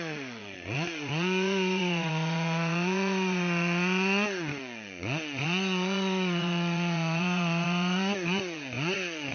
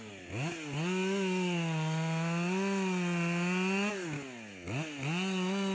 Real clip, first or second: second